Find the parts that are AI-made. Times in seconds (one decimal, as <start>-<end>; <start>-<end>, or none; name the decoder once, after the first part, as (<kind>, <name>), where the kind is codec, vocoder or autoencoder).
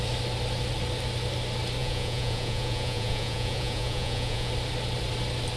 1.8-4.5 (vocoder, Vocos)